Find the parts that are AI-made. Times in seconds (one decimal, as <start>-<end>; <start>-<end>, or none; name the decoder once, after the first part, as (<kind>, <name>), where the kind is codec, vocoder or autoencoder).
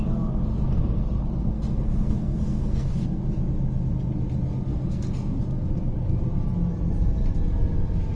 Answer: 0.5-3.2 (codec, SNAC); 4.7-5.4